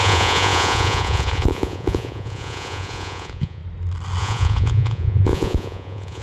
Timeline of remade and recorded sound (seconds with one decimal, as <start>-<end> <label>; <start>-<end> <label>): 0.0-3.6 remade; 3.6-4.2 recorded; 4.2-6.2 remade